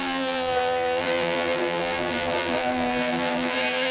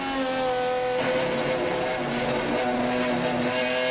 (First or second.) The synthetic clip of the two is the first